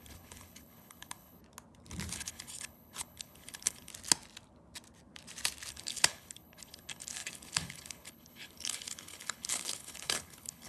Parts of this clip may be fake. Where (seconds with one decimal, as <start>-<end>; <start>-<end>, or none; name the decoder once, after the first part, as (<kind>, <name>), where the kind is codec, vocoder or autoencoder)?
0.0-1.4 (codec, HILCodec); 2.1-3.9; 5.7-10.7